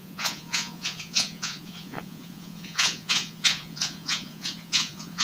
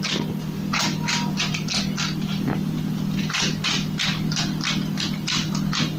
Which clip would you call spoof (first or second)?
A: first